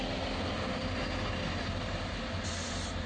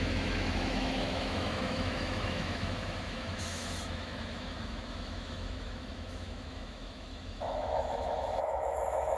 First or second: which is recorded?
first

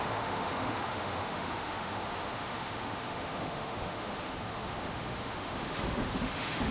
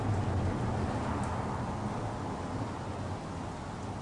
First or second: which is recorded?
second